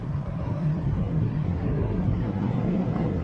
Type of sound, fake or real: fake